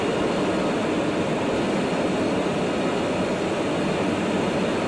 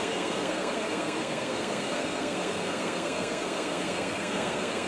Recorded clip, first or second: first